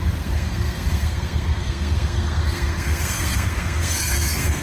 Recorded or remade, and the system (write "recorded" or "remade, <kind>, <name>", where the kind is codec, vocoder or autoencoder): remade, codec, SNAC